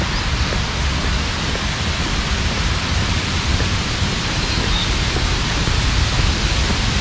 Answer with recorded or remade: recorded